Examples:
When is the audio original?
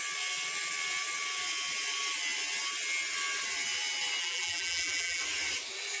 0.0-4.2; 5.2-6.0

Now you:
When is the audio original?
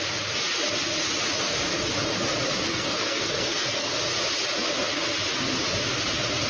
0.0-2.7; 3.9-6.5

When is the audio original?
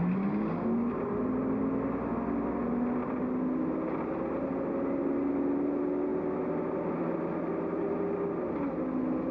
0.0-9.3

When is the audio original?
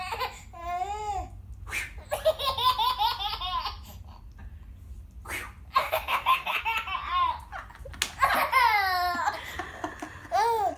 0.0-5.8; 6.6-10.8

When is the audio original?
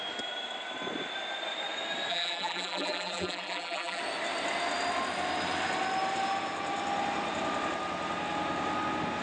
0.0-2.1; 4.0-9.2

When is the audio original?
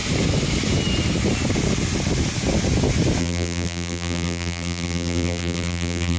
0.0-3.2